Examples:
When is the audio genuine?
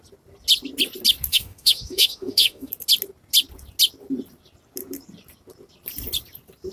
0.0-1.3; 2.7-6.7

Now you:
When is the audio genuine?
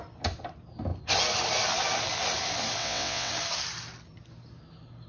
0.0-2.8; 3.3-5.1